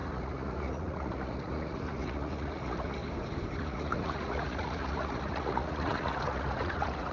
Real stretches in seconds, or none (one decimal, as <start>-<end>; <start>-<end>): 3.0-3.6

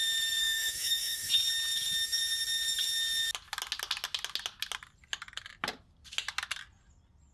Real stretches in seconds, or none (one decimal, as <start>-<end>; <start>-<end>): 0.0-0.4; 1.3-7.3